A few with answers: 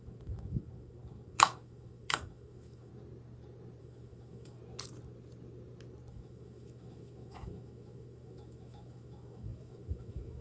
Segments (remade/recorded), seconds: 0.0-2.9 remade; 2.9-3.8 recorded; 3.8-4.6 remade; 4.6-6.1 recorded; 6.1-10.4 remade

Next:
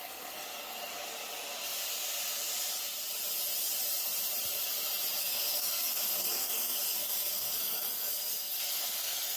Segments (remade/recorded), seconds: 0.0-0.9 remade; 0.9-5.2 recorded; 5.2-9.4 remade

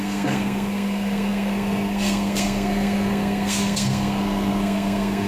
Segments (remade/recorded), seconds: 0.0-5.3 remade

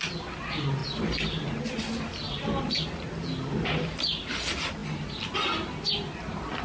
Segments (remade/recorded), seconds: 0.0-6.6 recorded

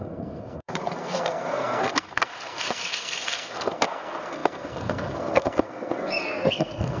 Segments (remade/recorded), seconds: 0.0-7.0 remade